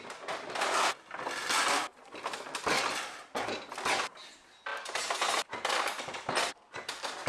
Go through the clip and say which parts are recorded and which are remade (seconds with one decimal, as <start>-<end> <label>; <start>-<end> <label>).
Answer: 0.0-7.3 recorded